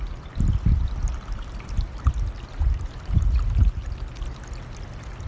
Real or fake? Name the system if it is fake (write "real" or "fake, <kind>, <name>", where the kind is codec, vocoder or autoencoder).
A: real